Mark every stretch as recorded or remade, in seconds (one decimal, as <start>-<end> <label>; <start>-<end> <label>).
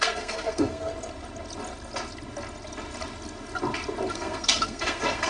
0.0-0.9 remade; 0.9-4.1 recorded; 4.1-5.3 remade